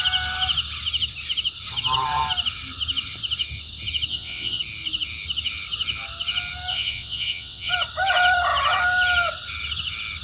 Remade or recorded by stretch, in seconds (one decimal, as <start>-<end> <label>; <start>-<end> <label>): 0.0-4.1 recorded; 4.1-4.6 remade; 4.6-6.7 recorded; 6.7-7.7 remade; 7.7-10.2 recorded